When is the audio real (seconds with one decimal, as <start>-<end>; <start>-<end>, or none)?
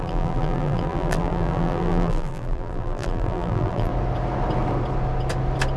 3.9-5.8